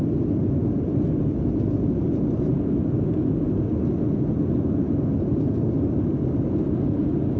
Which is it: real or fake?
real